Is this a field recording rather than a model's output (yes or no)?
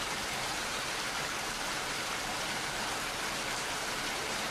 no